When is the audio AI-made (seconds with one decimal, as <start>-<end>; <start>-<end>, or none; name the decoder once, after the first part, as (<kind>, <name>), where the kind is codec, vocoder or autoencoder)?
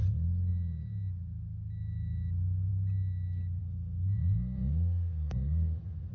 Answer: 3.6-6.1 (codec, SNAC)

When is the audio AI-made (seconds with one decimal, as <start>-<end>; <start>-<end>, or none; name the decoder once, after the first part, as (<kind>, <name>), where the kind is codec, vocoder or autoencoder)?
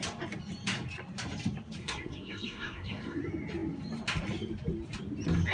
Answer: 1.8-3.2 (codec, SNAC)